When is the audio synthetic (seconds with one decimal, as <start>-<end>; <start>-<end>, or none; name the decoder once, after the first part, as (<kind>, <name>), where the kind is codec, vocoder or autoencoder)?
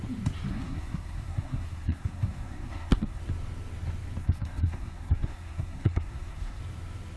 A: 0.5-3.2 (codec, SNAC); 4.2-6.6